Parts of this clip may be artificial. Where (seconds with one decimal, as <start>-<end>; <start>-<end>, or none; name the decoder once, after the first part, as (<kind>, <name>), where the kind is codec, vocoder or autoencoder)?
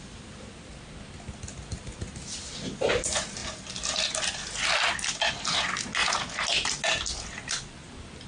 none